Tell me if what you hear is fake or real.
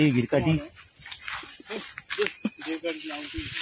real